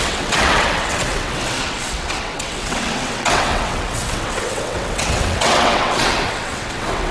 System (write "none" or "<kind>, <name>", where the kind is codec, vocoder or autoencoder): vocoder, WaveNeXt